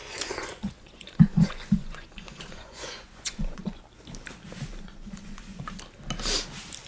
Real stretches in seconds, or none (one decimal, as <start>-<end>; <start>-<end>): 3.8-4.7; 5.6-6.9